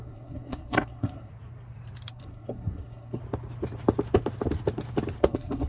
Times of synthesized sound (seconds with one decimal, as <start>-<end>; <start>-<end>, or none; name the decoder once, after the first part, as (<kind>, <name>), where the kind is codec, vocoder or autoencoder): 0.0-1.3 (codec, SNAC); 2.1-3.2; 5.2-5.7